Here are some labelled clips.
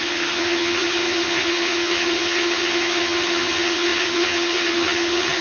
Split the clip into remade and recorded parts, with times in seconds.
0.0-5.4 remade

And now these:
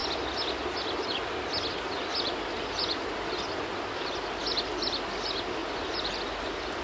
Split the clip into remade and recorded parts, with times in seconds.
0.0-6.8 recorded

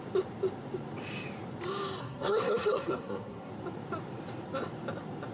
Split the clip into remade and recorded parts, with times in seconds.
0.0-2.0 recorded; 2.0-3.5 remade; 3.5-5.3 recorded

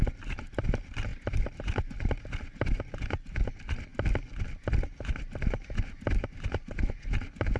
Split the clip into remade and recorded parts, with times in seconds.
0.0-7.6 recorded

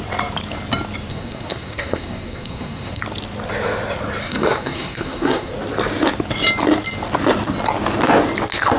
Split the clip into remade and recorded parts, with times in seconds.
0.0-1.1 recorded; 1.1-3.0 remade; 3.0-4.2 recorded; 4.2-5.5 remade; 5.5-8.8 recorded

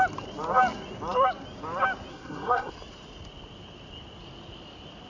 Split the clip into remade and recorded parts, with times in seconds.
0.0-2.1 recorded; 2.1-2.7 remade; 2.7-5.1 recorded

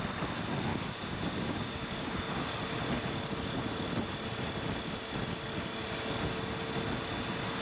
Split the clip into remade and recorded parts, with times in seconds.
0.0-0.7 recorded; 0.7-2.3 remade; 2.3-7.6 recorded

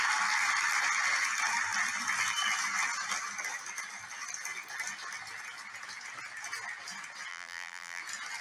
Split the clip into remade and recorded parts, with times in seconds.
0.0-7.3 recorded; 7.3-8.0 remade; 8.0-8.4 recorded